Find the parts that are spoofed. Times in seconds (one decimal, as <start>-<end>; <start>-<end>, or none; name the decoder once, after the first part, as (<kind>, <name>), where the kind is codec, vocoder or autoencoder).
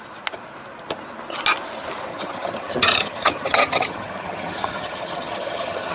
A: 2.1-5.9 (vocoder, HiFi-GAN)